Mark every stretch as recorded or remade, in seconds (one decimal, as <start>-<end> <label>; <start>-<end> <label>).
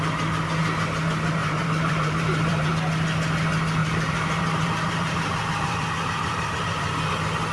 0.0-1.4 recorded; 1.4-2.7 remade; 2.7-3.8 recorded; 3.8-7.1 remade; 7.1-7.5 recorded